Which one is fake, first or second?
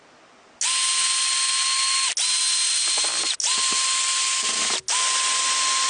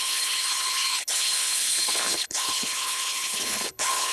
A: second